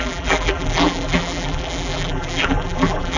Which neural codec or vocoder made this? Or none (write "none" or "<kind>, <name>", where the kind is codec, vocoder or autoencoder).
vocoder, BigVGAN v2